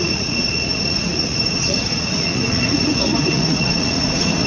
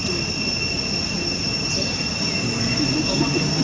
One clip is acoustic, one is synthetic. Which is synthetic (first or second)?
first